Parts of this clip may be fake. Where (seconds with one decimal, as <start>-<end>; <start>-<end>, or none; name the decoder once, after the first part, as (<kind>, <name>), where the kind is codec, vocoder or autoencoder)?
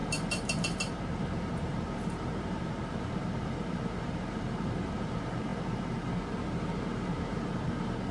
0.0-8.1 (vocoder, BigVGAN v2)